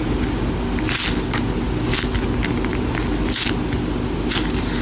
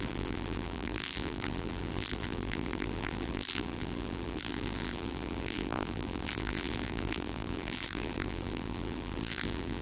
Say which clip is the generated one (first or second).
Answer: second